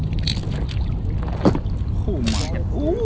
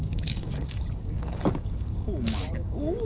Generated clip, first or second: second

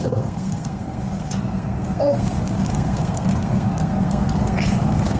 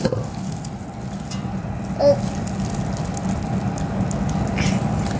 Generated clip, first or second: first